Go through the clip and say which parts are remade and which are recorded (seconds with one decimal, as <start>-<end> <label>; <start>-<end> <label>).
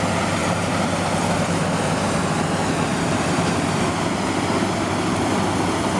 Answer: 0.0-2.9 recorded; 2.9-3.9 remade; 3.9-6.0 recorded